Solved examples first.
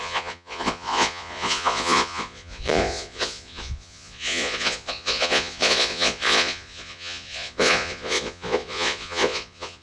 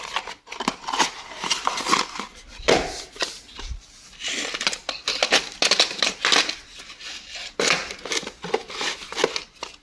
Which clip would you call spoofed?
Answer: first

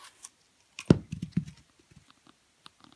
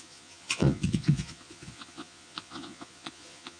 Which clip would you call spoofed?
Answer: second